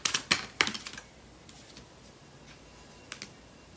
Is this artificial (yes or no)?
no